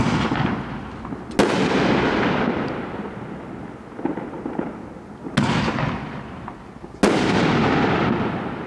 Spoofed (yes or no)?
no